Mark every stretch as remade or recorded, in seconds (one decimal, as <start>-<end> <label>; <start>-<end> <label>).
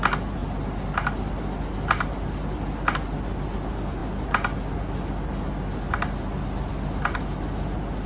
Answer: 0.0-8.1 recorded